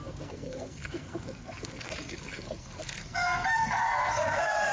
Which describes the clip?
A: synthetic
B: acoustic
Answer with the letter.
A